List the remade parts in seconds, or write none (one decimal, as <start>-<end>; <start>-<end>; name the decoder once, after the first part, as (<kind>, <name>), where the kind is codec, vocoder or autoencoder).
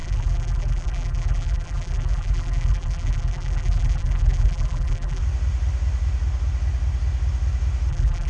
0.0-5.2 (vocoder, BigVGAN v2); 7.9-8.3